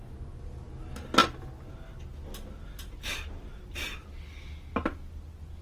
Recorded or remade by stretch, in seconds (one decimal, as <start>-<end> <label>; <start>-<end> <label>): 0.0-5.6 recorded